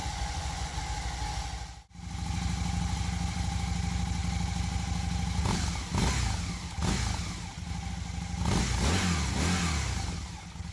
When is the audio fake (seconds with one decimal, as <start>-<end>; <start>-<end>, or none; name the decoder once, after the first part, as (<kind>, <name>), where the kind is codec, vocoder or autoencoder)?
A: 0.0-0.8 (vocoder, Vocos)